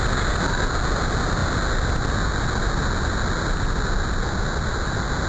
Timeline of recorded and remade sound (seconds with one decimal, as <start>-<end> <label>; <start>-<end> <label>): 0.0-5.3 recorded